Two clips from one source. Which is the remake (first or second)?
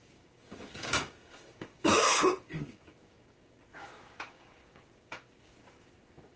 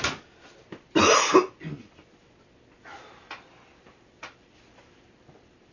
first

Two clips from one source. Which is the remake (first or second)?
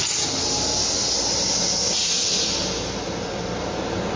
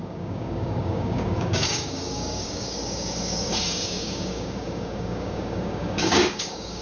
second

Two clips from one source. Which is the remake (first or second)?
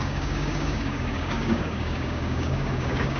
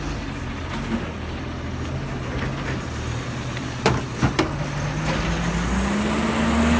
first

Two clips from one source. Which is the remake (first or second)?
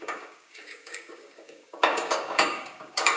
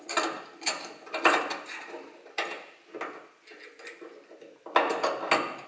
first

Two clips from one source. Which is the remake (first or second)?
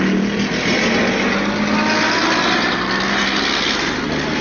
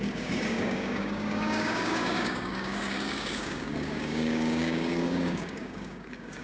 second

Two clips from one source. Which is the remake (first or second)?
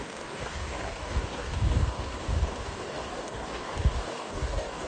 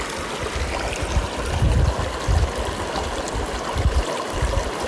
first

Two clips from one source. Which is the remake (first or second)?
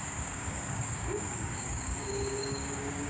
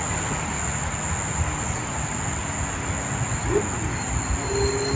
first